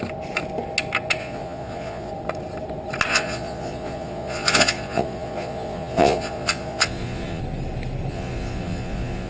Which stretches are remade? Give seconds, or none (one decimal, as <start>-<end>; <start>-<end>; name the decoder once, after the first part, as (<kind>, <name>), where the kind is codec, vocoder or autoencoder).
1.2-2.1 (vocoder, Vocos); 3.1-7.4; 8.1-9.3